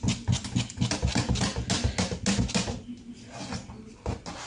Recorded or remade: recorded